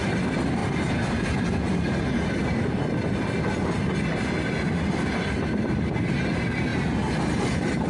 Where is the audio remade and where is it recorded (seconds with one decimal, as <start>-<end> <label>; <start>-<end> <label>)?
0.0-7.9 recorded

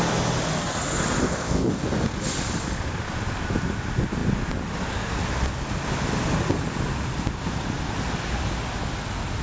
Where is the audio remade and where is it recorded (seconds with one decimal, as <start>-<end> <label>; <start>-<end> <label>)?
0.0-1.2 recorded; 1.2-1.7 remade; 1.7-9.4 recorded

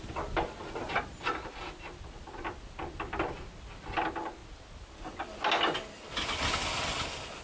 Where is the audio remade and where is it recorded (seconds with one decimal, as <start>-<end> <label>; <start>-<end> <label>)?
0.0-7.4 recorded

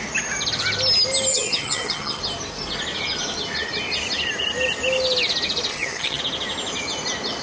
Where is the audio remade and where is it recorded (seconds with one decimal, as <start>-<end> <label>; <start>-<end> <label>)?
0.0-1.3 recorded; 1.3-2.2 remade; 2.2-5.7 recorded; 5.7-6.2 remade; 6.2-7.4 recorded

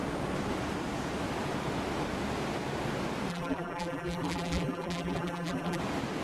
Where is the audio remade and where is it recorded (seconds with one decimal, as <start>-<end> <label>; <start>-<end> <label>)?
0.0-3.3 recorded; 3.3-5.8 remade; 5.8-6.2 recorded

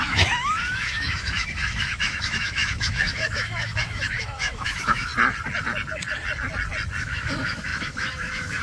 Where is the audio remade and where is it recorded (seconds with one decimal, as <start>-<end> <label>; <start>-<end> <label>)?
0.0-5.1 remade; 5.1-7.0 recorded; 7.0-8.6 remade

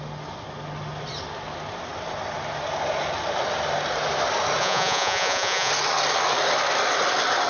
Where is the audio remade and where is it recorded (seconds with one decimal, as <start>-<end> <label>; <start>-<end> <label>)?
0.0-4.6 recorded; 4.6-5.7 remade; 5.7-7.5 recorded

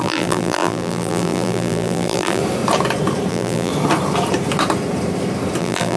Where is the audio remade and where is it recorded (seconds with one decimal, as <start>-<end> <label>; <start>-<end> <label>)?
0.0-2.4 remade; 2.4-3.3 recorded; 3.3-3.7 remade; 3.7-5.6 recorded; 5.6-6.0 remade